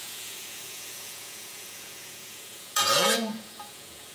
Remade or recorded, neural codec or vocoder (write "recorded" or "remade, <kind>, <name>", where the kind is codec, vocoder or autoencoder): remade, vocoder, Vocos